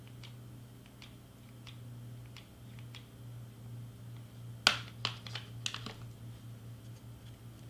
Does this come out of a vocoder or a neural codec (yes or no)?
no